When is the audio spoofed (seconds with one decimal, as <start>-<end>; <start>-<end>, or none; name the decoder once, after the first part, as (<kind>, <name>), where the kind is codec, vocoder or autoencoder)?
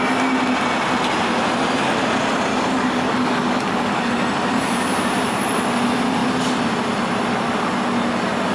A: 2.5-4.1 (codec, DAC)